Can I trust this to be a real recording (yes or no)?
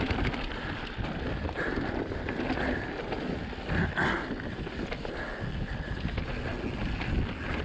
yes